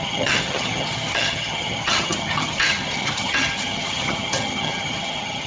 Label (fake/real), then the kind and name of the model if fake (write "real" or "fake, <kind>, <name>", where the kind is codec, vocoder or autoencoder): fake, vocoder, HiFi-GAN